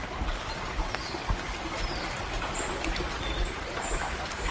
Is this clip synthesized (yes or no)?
no